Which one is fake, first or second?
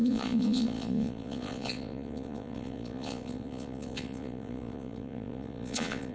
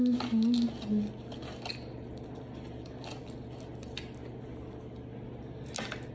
first